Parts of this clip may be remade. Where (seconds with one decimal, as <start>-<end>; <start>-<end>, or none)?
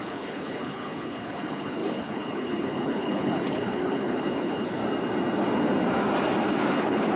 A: 0.0-4.8; 6.8-7.2